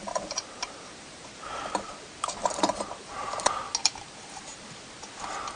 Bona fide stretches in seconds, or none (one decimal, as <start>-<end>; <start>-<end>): 1.3-2.4; 3.1-3.8; 4.6-5.6

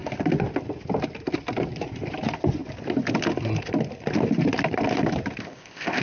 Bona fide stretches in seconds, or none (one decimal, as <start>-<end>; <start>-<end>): 0.0-5.4